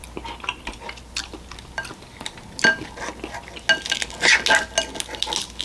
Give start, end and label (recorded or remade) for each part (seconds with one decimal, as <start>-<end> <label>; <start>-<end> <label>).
0.0-5.6 recorded